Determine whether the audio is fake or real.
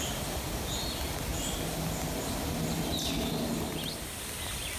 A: real